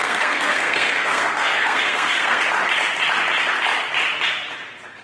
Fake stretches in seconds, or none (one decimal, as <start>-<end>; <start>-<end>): 0.0-2.4